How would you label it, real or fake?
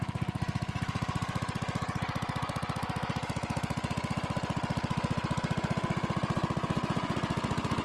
real